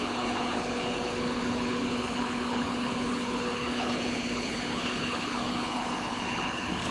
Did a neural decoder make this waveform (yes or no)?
yes